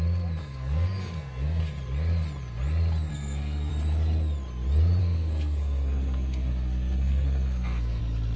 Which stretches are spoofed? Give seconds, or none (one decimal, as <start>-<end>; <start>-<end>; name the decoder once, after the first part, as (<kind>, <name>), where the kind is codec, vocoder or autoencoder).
0.4-1.6 (codec, SNAC); 3.1-3.7; 5.0-8.0